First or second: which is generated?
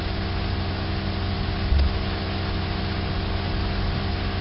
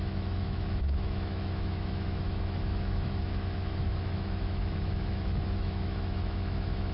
second